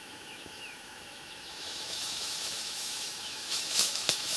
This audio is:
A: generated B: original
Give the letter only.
A